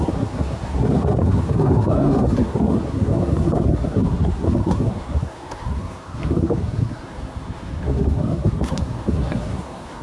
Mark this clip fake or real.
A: fake